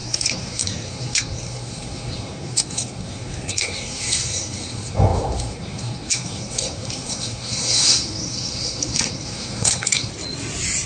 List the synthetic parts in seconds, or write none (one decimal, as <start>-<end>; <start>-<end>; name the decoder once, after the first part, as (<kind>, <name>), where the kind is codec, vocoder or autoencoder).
0.0-10.1 (codec, SNAC)